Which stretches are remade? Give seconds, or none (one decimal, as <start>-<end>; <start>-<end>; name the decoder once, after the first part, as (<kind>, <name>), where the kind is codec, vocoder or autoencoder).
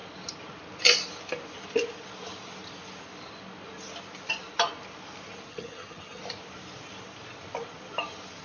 5.5-6.2 (vocoder, HiFi-GAN)